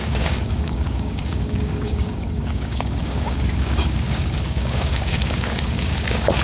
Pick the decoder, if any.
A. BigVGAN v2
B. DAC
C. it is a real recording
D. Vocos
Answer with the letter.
B